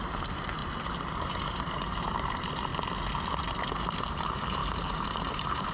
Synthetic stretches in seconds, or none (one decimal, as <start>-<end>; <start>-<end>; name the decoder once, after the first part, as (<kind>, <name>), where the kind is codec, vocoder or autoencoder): 0.0-0.6 (vocoder, BigVGAN v2); 1.1-2.7; 3.7-5.7